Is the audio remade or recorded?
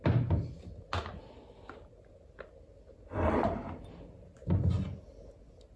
recorded